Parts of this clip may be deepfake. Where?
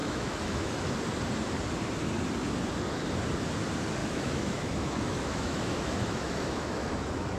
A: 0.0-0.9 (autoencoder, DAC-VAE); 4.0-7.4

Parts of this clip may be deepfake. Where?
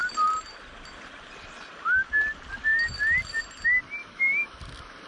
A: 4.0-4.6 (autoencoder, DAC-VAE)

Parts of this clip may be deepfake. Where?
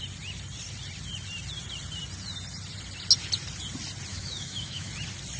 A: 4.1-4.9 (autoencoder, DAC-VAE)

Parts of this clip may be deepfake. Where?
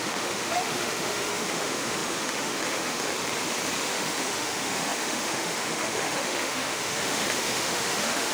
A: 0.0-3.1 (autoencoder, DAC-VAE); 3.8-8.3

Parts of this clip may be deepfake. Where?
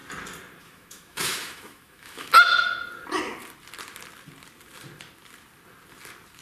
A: 0.6-2.3 (autoencoder, DAC-VAE)